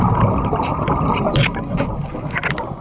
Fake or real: real